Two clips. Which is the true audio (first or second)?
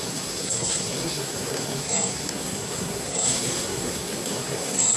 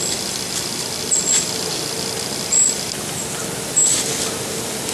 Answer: second